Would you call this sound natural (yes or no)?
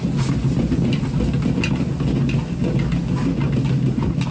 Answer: yes